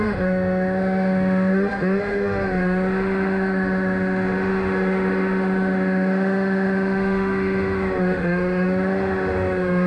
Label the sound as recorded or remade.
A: remade